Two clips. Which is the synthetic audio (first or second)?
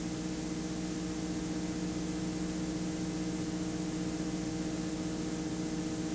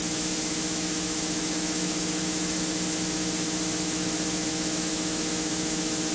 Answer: second